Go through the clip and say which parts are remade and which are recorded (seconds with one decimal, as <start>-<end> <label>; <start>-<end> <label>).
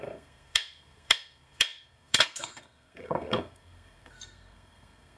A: 0.0-5.2 remade